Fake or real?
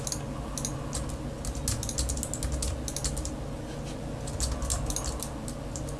real